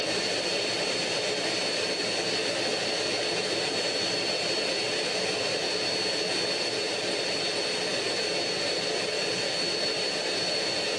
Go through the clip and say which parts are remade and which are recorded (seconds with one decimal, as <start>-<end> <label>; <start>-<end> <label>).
0.0-11.0 recorded